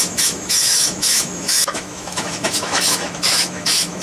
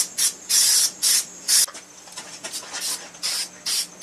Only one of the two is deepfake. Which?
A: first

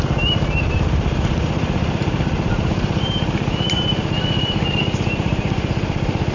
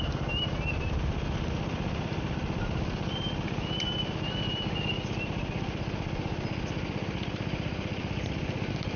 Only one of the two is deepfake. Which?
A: first